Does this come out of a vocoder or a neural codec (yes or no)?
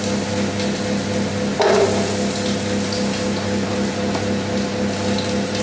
no